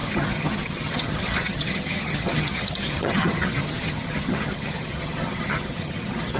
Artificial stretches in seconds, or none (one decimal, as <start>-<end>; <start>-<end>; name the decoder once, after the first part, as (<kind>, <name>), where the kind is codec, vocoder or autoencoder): 0.0-6.4 (vocoder, HiFi-GAN)

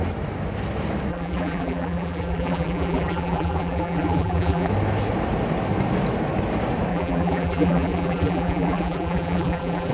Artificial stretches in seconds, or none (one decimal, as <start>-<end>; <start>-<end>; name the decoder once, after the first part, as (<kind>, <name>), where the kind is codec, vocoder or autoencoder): 1.1-4.7 (vocoder, BigVGAN v2); 6.9-9.9

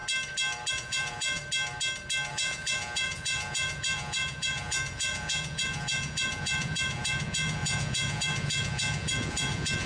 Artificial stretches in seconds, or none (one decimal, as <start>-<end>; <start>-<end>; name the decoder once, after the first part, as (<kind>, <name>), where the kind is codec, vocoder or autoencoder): 0.7-1.4 (vocoder, Vocos); 2.3-9.9

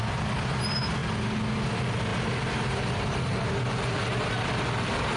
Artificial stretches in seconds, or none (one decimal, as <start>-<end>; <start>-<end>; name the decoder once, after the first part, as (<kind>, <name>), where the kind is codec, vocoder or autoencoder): none

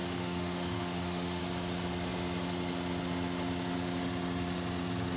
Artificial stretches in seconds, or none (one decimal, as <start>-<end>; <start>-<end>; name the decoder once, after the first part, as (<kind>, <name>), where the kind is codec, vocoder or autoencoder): 0.0-1.4 (autoencoder, DAC-VAE)

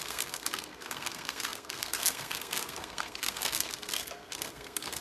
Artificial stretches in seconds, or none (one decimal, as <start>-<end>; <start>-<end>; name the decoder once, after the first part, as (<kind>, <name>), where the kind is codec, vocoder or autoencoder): 0.0-5.0 (codec, SNAC)